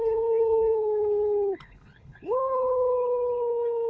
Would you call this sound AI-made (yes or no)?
yes